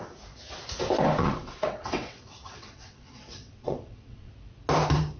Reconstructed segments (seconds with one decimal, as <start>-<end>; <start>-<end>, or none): 1.2-4.3

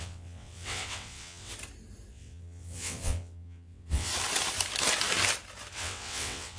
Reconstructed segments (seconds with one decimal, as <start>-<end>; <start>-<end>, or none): 0.0-1.5; 2.1-4.1; 5.7-6.6

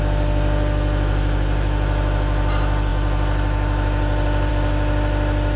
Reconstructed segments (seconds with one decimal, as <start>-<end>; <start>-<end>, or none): none

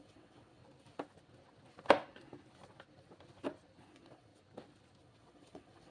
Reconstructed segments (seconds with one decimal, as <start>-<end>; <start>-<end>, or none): 0.0-0.6; 3.9-4.3; 5.0-5.9

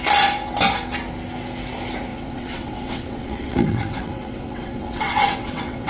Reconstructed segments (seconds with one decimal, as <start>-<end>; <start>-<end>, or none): 2.1-5.9

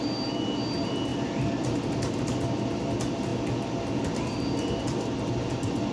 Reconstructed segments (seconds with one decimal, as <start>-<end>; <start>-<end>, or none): none